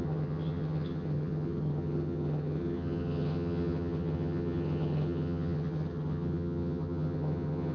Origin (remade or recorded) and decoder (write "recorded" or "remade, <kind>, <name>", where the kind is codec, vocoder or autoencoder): remade, vocoder, HiFi-GAN